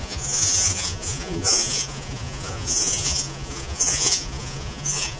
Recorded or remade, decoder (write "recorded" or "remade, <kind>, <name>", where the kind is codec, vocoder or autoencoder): remade, vocoder, Vocos